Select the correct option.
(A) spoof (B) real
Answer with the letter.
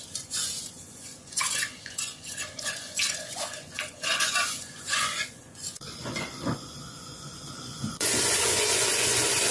A